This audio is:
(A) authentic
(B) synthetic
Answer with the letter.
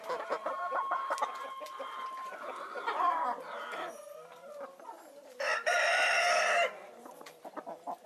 A